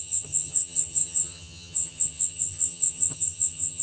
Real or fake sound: fake